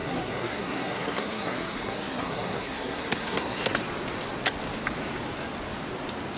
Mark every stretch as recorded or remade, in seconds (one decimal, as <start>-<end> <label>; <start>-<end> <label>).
0.0-3.8 remade; 3.8-6.4 recorded